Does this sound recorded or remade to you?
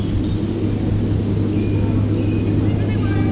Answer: recorded